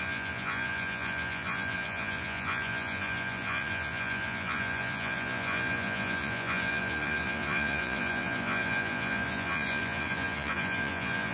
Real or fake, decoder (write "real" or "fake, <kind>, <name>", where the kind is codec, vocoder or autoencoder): fake, vocoder, Vocos